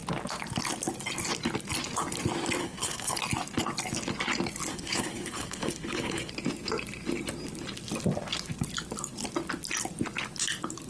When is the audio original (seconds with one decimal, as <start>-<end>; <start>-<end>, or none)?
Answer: 0.0-2.6; 3.2-4.7; 6.3-10.9